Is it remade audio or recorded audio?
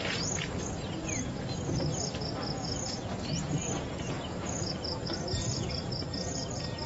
recorded